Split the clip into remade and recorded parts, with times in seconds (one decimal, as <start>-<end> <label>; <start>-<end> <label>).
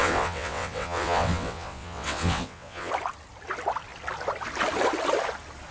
0.0-2.9 remade; 2.9-5.7 recorded